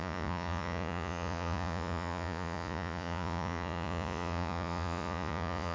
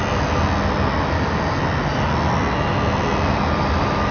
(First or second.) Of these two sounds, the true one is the second